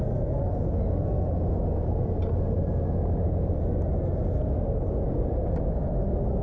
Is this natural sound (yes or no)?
yes